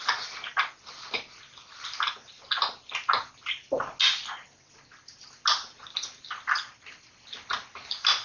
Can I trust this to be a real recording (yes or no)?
yes